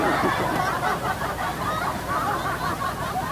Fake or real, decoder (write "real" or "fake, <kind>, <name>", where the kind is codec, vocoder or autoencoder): real